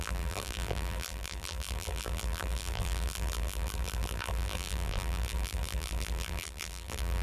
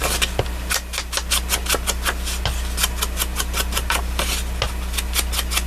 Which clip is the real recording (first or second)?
second